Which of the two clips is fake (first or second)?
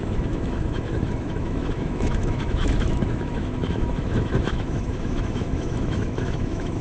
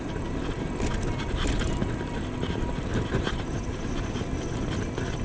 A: first